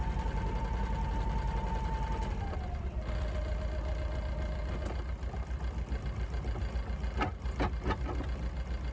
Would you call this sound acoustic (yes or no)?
yes